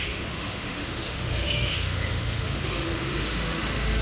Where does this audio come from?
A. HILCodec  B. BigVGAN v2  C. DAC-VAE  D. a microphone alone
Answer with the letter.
C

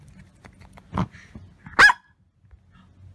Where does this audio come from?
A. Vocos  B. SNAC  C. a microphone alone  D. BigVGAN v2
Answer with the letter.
C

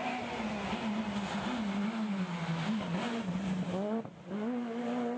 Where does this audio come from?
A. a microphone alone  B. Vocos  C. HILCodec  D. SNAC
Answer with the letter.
A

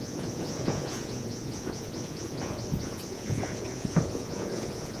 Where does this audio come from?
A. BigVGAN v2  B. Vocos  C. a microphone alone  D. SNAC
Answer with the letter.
B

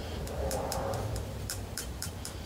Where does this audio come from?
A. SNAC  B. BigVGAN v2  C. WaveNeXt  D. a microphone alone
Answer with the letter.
B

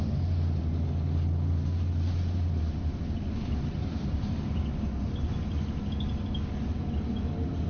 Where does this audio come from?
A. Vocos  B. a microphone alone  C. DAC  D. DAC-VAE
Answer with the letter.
B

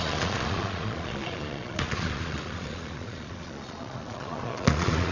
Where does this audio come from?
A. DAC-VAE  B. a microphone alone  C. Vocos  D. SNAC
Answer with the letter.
C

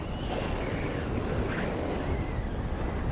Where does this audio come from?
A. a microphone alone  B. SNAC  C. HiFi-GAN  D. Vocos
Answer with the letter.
A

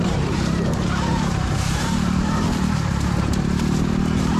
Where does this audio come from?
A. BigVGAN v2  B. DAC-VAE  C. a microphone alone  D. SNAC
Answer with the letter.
A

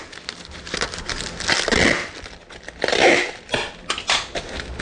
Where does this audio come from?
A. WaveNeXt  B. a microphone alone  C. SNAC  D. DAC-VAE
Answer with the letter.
B